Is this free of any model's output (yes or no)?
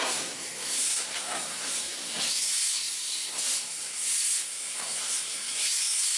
no